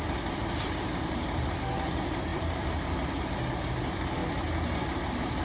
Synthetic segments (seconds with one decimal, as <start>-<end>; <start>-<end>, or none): 0.0-4.2; 4.9-5.4